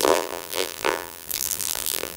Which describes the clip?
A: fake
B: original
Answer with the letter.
A